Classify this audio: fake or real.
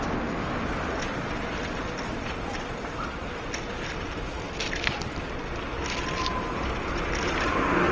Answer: real